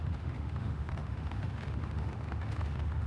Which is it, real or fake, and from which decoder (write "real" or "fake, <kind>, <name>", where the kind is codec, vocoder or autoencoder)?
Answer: fake, autoencoder, DAC-VAE